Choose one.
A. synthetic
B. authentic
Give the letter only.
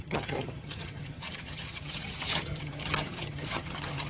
A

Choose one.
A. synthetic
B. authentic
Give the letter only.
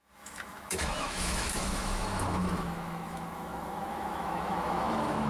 A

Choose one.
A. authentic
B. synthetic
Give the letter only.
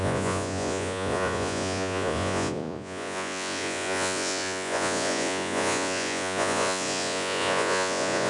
B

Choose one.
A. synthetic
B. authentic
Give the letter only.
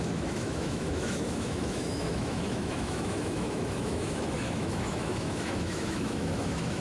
A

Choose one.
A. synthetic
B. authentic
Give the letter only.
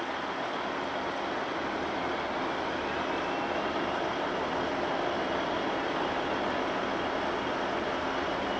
B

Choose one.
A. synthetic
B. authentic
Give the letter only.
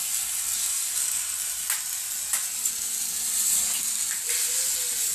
B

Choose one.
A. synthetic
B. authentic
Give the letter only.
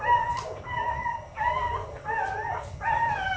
B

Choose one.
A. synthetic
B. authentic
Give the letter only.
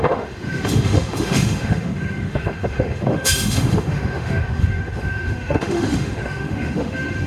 A